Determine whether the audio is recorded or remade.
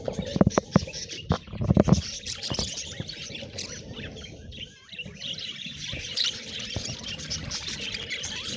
remade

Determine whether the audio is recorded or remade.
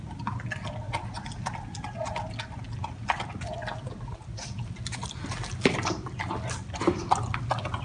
recorded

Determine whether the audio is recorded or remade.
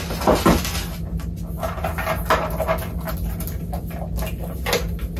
recorded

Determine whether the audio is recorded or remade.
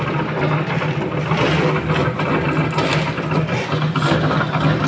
recorded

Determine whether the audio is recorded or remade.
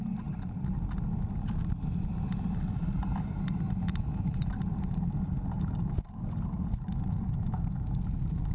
recorded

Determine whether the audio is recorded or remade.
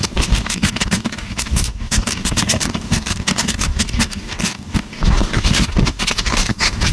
remade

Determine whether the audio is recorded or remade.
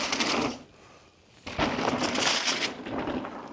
recorded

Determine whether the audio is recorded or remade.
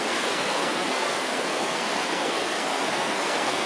remade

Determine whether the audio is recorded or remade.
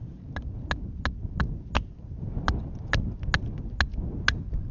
recorded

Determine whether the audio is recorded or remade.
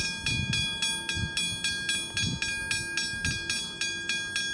recorded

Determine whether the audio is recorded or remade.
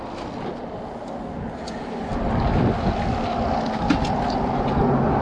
recorded